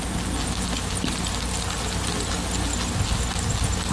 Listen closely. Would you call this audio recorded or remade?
recorded